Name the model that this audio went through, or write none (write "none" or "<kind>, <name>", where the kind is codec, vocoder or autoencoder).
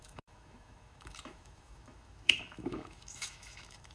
autoencoder, DAC-VAE